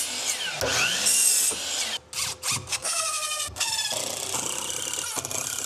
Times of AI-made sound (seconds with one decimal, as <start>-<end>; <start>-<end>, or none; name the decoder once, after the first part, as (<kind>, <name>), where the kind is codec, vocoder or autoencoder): 2.7-3.7 (codec, SNAC)